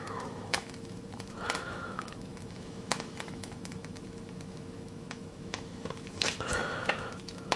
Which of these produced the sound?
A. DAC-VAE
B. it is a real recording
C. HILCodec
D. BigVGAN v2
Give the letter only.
A